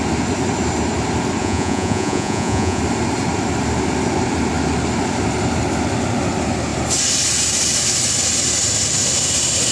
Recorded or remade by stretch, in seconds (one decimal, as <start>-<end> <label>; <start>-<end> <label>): 0.0-1.4 recorded; 1.4-2.8 remade; 2.8-9.7 recorded